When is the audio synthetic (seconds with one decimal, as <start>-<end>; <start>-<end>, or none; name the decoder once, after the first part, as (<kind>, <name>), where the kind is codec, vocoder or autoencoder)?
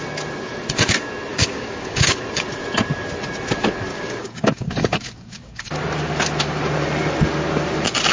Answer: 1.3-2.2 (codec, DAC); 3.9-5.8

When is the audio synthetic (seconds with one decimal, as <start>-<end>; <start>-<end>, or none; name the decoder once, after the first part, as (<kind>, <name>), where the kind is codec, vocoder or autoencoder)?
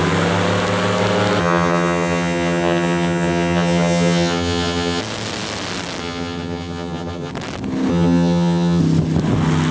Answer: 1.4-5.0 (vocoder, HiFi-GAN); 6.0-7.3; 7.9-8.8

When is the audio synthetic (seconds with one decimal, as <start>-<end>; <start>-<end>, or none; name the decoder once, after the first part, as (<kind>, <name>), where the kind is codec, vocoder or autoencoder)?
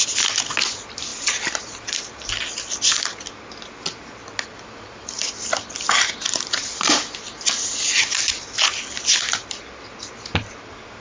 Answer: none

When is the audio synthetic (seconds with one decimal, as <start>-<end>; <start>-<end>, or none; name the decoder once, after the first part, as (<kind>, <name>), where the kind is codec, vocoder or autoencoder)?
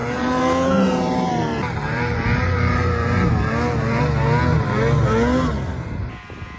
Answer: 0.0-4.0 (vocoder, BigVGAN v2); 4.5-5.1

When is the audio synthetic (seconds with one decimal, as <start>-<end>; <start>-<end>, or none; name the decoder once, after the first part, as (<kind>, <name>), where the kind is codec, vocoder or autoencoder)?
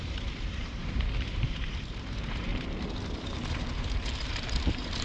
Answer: 0.0-2.5 (vocoder, BigVGAN v2); 4.1-5.0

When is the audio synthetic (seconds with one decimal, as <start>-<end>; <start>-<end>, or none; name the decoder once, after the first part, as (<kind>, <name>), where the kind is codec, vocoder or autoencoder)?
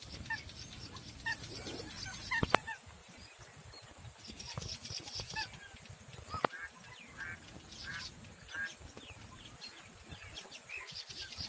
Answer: none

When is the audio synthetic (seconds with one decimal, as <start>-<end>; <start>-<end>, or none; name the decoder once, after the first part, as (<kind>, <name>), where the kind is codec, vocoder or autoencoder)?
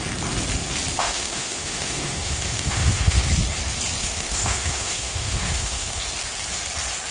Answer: 1.0-3.3 (autoencoder, DAC-VAE); 4.0-6.0